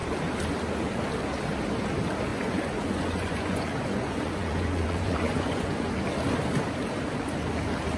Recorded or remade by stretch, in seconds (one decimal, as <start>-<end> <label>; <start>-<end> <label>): 0.0-2.3 recorded; 2.3-5.9 remade; 5.9-8.0 recorded